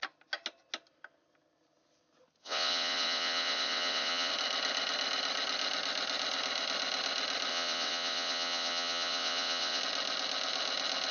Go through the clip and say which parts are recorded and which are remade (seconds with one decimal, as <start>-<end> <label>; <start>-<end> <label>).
0.0-2.4 recorded; 2.4-4.3 remade; 4.3-7.5 recorded; 7.5-9.8 remade; 9.8-11.1 recorded